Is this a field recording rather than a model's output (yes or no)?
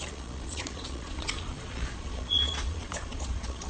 no